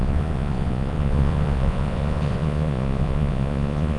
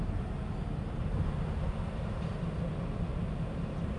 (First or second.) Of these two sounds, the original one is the second